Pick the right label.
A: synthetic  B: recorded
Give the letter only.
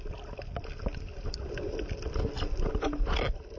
B